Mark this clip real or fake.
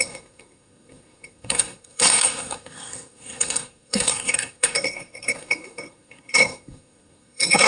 fake